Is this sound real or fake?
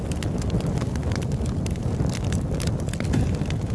real